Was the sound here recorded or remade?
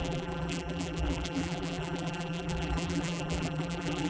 remade